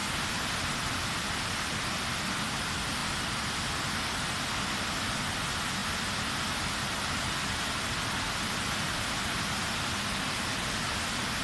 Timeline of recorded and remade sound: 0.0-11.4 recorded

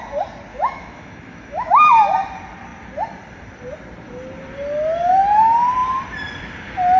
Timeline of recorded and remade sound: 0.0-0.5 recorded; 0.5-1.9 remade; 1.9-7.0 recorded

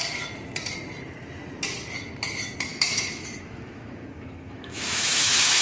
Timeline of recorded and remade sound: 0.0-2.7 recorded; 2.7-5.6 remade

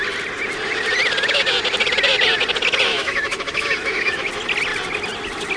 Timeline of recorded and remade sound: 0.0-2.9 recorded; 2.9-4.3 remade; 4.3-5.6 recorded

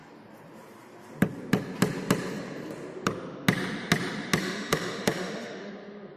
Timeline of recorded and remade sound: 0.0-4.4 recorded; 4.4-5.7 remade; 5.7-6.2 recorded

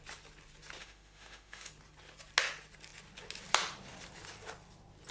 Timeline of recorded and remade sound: 0.0-0.8 recorded; 0.8-1.7 remade; 1.7-5.1 recorded